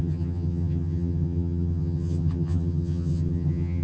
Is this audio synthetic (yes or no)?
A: yes